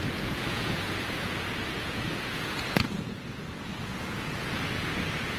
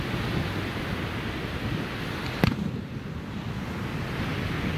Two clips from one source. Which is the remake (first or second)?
first